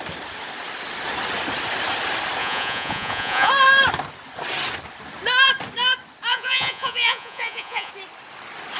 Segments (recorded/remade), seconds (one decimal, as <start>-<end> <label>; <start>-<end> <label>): 0.0-2.4 recorded; 2.4-3.5 remade; 3.5-6.3 recorded; 6.3-7.9 remade; 7.9-8.8 recorded